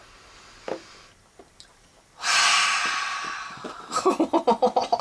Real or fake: real